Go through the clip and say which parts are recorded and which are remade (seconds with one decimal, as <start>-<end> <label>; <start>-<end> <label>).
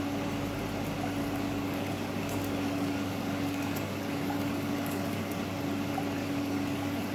0.0-1.2 recorded; 1.2-5.4 remade; 5.4-6.2 recorded; 6.2-7.1 remade